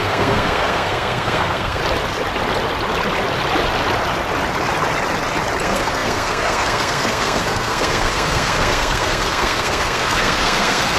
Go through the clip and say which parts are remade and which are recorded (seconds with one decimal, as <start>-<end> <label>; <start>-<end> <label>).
0.0-1.8 remade; 1.8-5.6 recorded; 5.6-11.0 remade